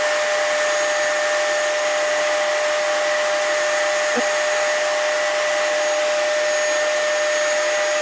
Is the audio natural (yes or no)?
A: yes